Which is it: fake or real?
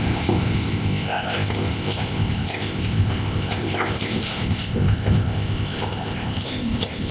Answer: fake